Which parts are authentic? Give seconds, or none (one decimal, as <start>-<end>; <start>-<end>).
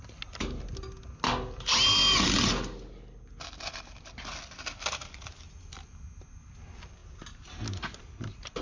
0.0-8.6